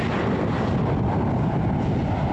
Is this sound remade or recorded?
recorded